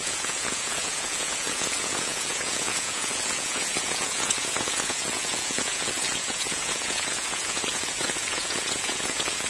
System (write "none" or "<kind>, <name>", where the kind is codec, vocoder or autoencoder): vocoder, Vocos